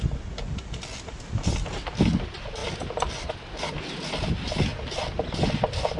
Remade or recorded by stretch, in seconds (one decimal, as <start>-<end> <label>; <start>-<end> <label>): 0.0-6.0 recorded

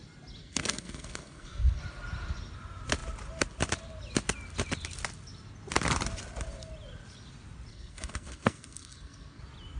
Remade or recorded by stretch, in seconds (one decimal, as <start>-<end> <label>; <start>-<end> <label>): 0.0-0.4 recorded; 0.4-1.8 remade; 1.8-7.7 recorded; 7.7-9.4 remade; 9.4-9.8 recorded